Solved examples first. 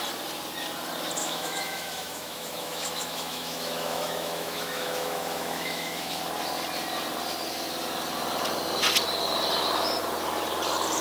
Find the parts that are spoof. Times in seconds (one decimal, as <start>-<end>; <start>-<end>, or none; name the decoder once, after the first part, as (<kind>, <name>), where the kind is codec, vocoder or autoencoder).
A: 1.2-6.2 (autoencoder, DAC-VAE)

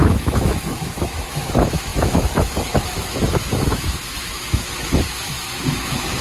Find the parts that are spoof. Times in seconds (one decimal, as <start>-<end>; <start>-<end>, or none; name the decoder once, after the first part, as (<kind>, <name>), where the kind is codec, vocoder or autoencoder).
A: 0.0-6.2 (autoencoder, DAC-VAE)

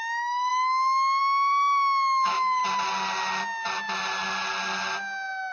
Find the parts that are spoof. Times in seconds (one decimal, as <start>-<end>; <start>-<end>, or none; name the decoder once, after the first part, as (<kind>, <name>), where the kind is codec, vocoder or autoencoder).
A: 0.0-2.6 (autoencoder, DAC-VAE)

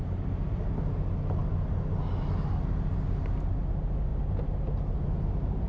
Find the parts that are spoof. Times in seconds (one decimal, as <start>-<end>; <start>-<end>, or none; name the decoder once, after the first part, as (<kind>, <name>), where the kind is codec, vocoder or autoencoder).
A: none